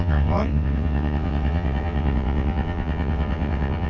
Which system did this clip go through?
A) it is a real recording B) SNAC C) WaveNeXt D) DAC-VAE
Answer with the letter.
C